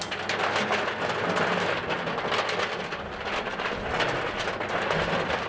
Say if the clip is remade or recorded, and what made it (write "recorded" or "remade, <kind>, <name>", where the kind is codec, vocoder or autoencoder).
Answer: recorded